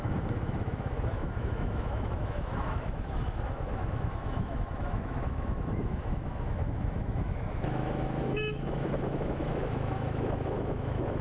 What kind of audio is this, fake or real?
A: fake